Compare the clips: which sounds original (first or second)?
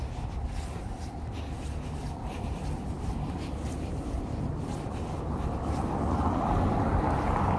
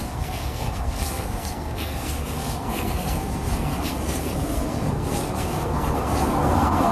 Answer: first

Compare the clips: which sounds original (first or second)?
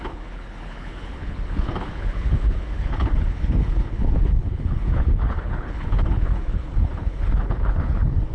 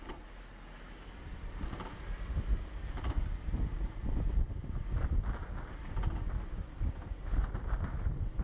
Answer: second